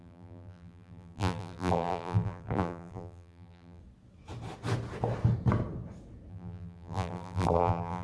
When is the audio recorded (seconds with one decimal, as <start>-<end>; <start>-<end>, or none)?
3.8-6.3